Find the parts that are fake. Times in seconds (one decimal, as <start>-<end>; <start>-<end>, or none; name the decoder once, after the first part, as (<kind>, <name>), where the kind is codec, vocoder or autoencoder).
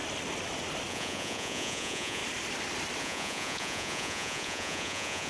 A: 0.9-2.2 (vocoder, Vocos); 3.0-5.3